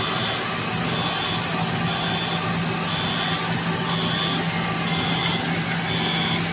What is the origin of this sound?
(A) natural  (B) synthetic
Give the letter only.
A